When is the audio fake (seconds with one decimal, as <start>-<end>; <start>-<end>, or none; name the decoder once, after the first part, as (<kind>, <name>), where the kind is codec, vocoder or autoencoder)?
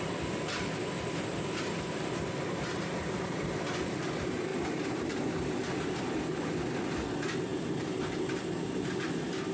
1.3-4.0 (vocoder, BigVGAN v2); 4.5-5.2